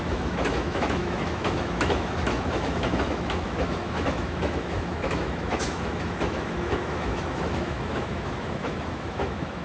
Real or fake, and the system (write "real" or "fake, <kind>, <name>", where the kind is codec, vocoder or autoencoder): fake, autoencoder, DAC-VAE